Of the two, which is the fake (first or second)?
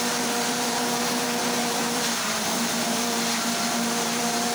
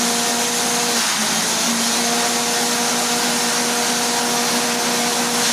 first